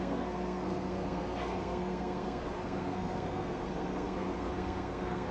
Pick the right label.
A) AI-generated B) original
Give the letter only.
A